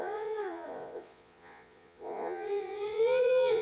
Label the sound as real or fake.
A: fake